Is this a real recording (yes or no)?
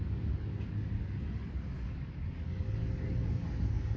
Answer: no